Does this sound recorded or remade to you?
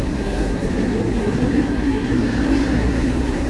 remade